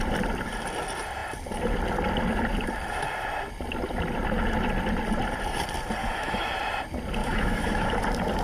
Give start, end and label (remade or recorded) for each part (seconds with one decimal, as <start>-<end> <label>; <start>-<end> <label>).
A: 0.0-6.0 recorded; 6.0-6.5 remade; 6.5-7.2 recorded; 7.2-8.0 remade; 8.0-8.4 recorded